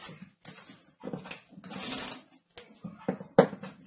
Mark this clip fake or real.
real